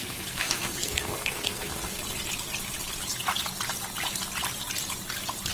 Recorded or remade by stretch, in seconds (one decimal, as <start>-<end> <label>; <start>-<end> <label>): 0.0-2.0 remade; 2.0-5.5 recorded